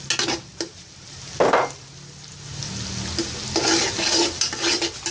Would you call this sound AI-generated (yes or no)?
no